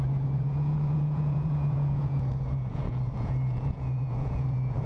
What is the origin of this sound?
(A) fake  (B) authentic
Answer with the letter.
A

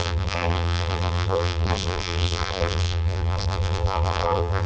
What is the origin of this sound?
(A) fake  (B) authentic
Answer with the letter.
A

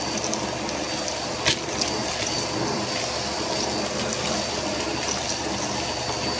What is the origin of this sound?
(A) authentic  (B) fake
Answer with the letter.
A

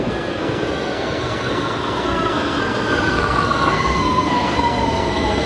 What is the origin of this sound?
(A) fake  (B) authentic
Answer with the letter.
A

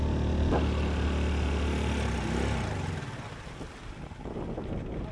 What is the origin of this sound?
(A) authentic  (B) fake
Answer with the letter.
A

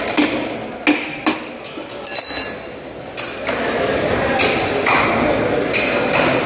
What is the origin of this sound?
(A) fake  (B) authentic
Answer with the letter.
B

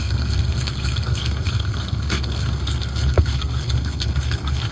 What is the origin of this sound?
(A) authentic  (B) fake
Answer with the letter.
B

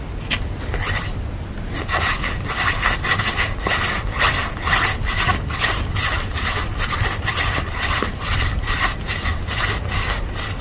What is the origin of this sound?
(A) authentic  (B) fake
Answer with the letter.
A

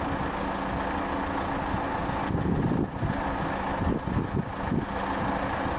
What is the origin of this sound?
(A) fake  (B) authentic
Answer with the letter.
B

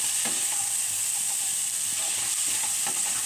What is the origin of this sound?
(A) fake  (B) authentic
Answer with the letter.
B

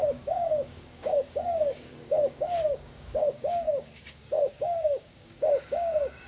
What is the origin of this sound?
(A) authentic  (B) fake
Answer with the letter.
B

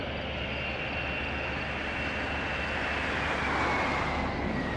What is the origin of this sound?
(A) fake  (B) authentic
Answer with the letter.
B